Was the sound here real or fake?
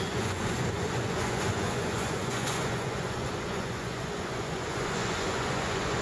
fake